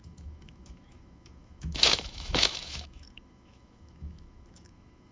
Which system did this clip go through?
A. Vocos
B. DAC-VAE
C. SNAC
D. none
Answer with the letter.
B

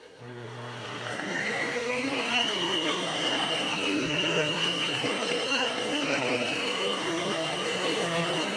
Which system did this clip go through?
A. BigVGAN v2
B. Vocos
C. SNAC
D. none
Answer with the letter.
C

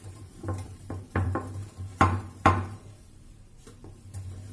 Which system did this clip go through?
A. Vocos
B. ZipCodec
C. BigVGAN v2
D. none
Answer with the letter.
C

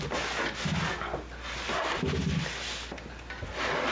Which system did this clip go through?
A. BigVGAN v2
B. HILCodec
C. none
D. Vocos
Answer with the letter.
C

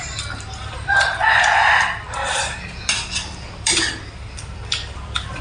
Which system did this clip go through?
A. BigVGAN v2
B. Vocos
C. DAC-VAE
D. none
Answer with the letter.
A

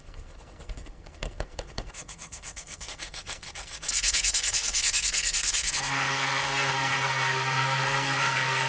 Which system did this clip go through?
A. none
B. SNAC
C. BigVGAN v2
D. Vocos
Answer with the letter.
B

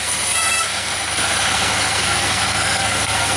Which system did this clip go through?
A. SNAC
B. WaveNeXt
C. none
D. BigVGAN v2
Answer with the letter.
A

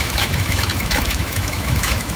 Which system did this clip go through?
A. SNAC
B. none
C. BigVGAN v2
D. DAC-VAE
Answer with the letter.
D